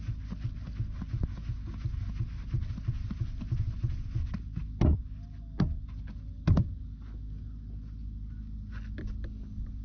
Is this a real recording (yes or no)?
yes